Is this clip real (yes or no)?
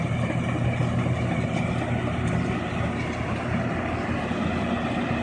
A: yes